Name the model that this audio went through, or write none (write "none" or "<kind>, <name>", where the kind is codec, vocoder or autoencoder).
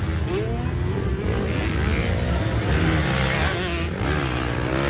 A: none